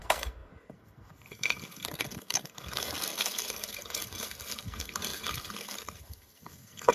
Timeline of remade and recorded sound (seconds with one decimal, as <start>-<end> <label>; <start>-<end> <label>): 0.0-6.9 remade